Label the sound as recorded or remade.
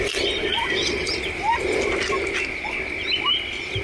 recorded